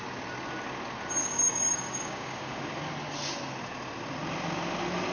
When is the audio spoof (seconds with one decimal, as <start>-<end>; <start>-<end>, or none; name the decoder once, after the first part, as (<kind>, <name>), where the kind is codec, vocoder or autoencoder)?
1.2-2.6 (codec, DAC)